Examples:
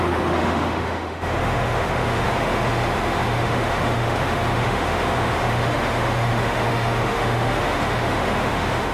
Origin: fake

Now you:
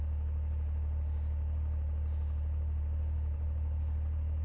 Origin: real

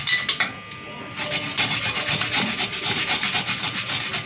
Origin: real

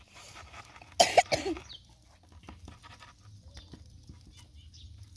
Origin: real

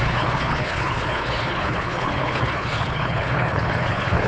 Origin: fake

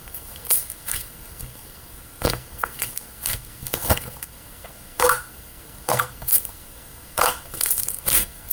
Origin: fake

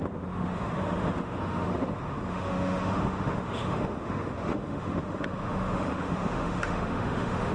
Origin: fake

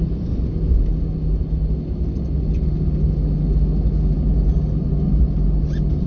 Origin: real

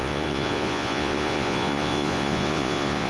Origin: fake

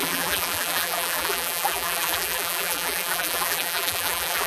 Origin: fake